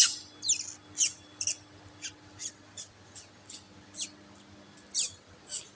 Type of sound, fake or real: real